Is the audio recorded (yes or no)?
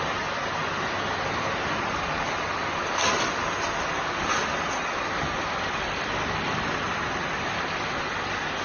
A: yes